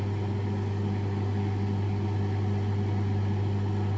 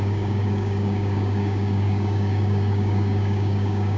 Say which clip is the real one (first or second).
first